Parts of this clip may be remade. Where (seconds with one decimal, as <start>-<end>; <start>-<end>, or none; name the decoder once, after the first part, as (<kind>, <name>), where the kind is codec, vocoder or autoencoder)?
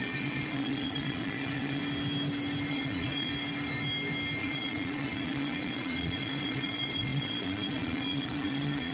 0.0-1.8 (vocoder, Vocos); 2.7-3.3; 4.4-8.9